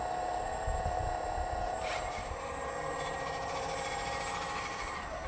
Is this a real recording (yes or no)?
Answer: no